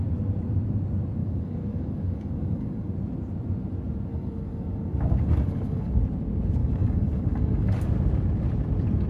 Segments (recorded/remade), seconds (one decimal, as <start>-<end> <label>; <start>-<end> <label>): 0.0-1.2 recorded; 1.2-2.9 remade; 2.9-4.1 recorded; 4.1-5.9 remade; 5.9-6.6 recorded; 6.6-7.9 remade; 7.9-9.1 recorded